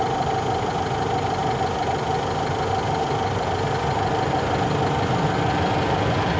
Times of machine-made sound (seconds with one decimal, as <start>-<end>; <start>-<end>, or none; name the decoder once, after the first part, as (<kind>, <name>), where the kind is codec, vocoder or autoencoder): none